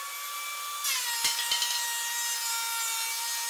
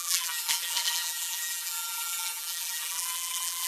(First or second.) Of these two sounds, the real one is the first